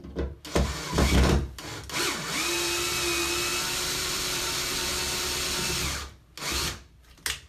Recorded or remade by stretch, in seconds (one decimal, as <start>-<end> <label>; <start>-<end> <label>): 0.0-3.5 recorded; 3.5-4.9 remade; 4.9-7.5 recorded